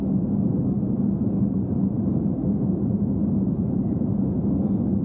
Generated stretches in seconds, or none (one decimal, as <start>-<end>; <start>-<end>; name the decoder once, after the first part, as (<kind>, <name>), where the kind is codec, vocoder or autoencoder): 2.4-4.5 (vocoder, BigVGAN v2)